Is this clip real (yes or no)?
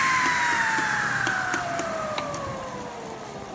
no